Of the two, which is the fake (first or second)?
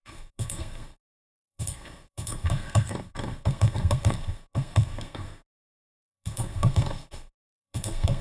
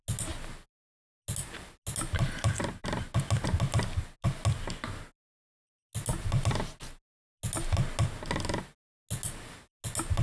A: first